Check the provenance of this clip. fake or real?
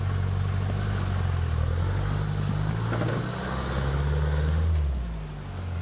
real